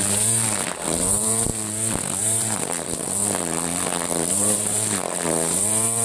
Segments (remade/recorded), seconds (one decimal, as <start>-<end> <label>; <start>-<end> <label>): 0.0-1.5 remade; 1.5-2.2 recorded; 2.2-3.2 remade; 3.2-4.3 recorded; 4.3-6.0 remade